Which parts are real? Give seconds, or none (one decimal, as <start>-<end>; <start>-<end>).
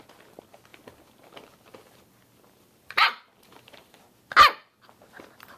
0.0-0.7; 4.0-5.6